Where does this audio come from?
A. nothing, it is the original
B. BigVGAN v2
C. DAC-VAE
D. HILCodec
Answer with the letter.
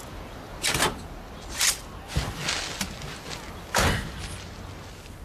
A